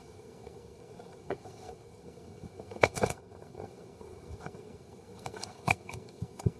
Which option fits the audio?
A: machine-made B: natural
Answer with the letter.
A